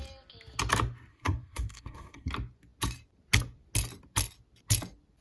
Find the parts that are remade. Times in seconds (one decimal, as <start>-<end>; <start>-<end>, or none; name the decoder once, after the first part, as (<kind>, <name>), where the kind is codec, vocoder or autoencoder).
1.1-2.3 (codec, SNAC)